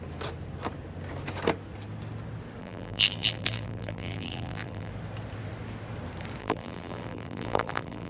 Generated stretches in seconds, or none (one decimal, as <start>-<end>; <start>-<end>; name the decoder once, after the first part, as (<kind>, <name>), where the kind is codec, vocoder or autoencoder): 2.6-4.9 (vocoder, BigVGAN v2); 6.4-8.1